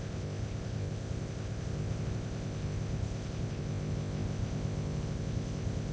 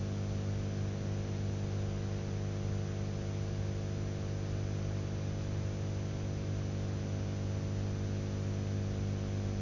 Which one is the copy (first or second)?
first